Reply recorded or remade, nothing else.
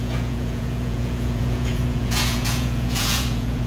remade